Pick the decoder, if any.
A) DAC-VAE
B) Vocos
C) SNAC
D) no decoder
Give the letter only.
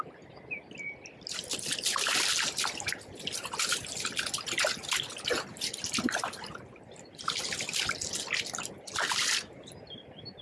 D